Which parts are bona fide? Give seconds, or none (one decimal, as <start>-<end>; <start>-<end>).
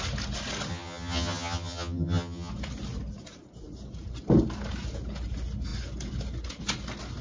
0.0-0.7; 2.5-7.2